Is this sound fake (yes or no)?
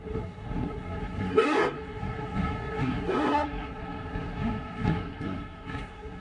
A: yes